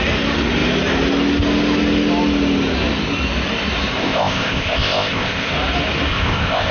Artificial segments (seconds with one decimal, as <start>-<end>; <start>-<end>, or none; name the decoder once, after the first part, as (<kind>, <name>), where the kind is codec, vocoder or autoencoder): 4.0-5.5 (codec, ZipCodec); 6.1-6.7